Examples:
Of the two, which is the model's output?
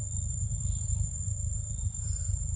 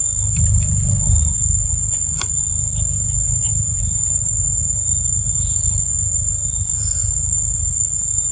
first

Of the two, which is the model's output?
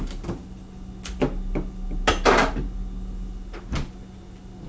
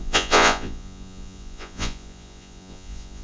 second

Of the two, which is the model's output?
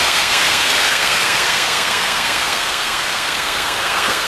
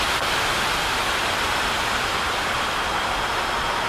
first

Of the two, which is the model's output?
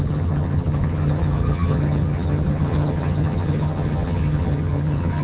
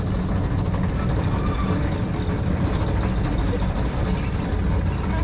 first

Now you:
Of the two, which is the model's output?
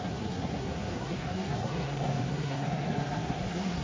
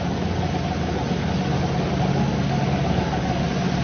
first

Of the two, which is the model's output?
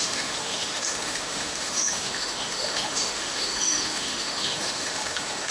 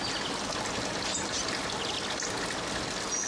first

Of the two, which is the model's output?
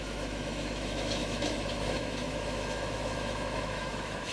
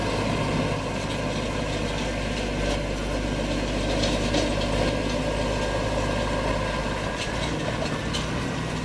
first